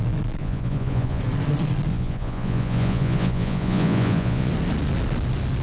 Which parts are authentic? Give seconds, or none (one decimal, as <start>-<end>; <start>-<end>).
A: 0.0-0.4; 1.2-1.9; 4.5-5.6